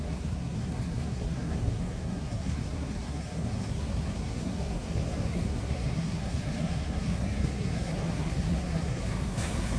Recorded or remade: remade